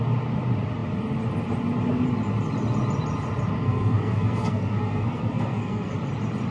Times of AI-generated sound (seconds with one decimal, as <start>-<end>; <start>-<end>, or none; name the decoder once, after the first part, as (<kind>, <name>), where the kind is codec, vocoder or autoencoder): 3.6-5.9 (codec, SNAC)